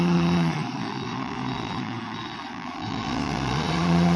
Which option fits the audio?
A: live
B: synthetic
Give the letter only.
B